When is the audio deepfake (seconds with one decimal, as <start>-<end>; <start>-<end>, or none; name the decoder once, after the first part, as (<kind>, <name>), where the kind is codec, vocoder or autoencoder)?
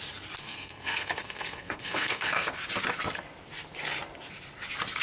0.4-2.5 (codec, SNAC)